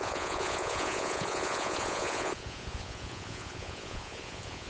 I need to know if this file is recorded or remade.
remade